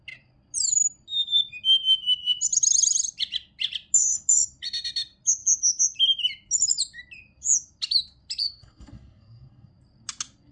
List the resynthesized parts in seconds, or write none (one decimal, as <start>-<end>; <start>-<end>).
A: 8.4-9.7